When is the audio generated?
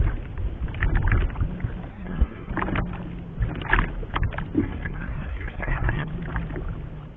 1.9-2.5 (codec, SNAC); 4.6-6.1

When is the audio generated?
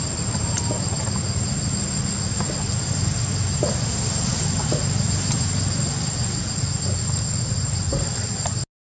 3.3-3.9 (vocoder, BigVGAN v2)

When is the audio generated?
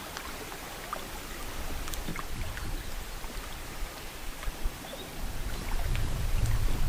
2.1-5.5 (vocoder, BigVGAN v2)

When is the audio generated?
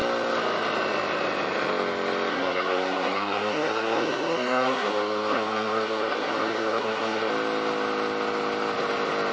2.3-7.3 (codec, SNAC)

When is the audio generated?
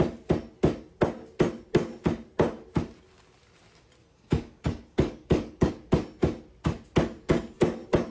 4.0-5.7 (codec, DAC)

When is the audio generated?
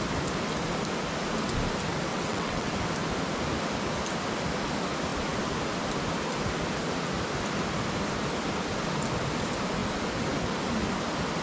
2.1-2.7 (vocoder, WaveNeXt)